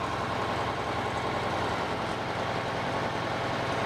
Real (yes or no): no